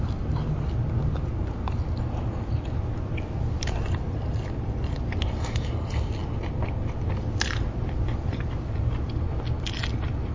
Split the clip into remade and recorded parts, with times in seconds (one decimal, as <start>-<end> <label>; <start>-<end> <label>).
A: 0.0-10.3 recorded